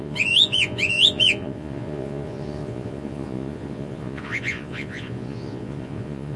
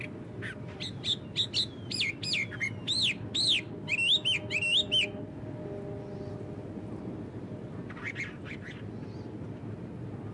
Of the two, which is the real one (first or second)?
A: second